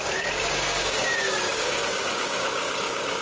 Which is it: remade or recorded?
remade